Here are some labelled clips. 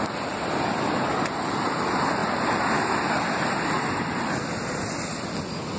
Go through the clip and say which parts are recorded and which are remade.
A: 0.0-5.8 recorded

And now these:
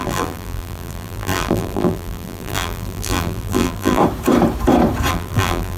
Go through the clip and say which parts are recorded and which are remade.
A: 0.0-4.0 remade; 4.0-5.1 recorded; 5.1-5.8 remade

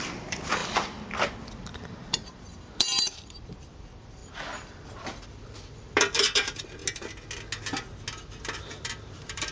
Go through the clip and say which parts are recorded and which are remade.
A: 0.0-6.8 remade; 6.8-8.6 recorded; 8.6-9.5 remade

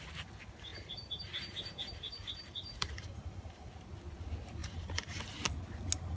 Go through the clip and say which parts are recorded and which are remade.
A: 0.0-0.7 recorded; 0.7-3.7 remade; 3.7-4.6 recorded; 4.6-5.2 remade; 5.2-6.2 recorded